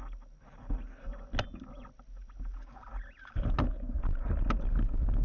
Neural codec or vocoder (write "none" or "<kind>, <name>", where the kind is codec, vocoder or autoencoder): none